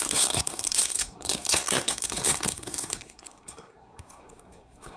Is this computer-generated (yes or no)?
yes